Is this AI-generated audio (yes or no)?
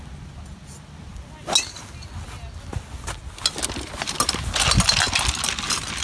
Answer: no